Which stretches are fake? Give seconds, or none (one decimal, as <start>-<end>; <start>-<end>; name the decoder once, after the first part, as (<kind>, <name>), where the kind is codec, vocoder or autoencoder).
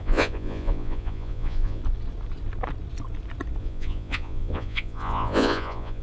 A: 0.0-1.8 (vocoder, Vocos); 3.6-6.0